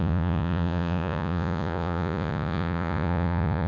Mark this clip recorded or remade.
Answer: remade